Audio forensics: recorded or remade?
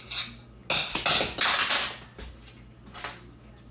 recorded